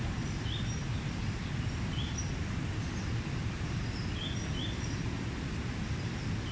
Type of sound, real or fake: real